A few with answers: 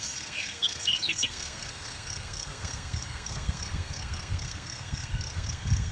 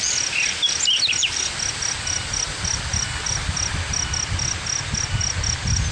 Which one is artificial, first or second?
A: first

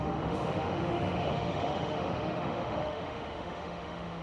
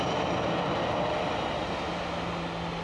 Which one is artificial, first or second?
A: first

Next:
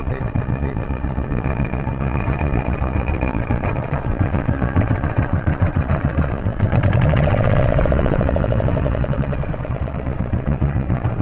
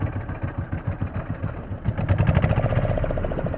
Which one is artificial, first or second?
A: first